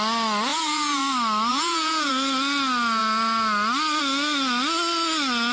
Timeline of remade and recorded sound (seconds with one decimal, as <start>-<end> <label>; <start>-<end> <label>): 0.0-0.5 recorded; 0.5-1.0 remade; 1.0-1.5 recorded; 1.5-2.1 remade; 2.1-5.5 recorded